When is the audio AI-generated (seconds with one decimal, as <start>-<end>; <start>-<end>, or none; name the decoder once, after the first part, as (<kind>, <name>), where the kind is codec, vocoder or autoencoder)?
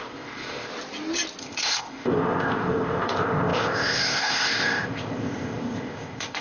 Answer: 0.0-0.7 (codec, ZipCodec); 1.4-6.4